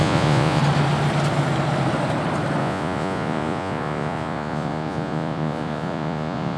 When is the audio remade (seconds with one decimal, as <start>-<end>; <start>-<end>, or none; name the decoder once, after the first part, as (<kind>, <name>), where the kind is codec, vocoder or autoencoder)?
0.0-0.6 (vocoder, Vocos); 2.6-6.6